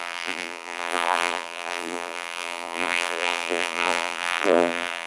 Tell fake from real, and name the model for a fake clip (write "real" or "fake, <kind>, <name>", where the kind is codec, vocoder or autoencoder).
fake, vocoder, BigVGAN v2